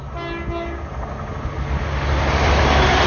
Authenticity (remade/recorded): recorded